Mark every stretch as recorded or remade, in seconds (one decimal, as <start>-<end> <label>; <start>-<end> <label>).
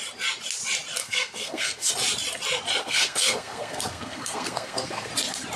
0.0-1.0 recorded; 1.0-1.9 remade; 1.9-2.8 recorded; 2.8-5.1 remade; 5.1-5.6 recorded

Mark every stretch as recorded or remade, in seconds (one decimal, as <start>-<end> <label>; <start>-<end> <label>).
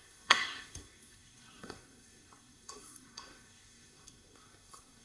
0.0-5.0 remade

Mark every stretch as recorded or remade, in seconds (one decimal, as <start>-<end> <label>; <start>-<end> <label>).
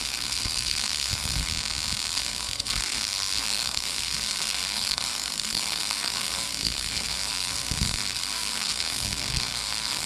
0.0-1.5 remade; 1.5-2.1 recorded; 2.1-10.1 remade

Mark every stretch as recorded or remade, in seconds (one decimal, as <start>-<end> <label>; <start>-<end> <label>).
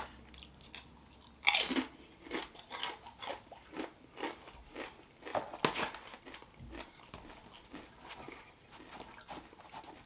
0.0-10.1 recorded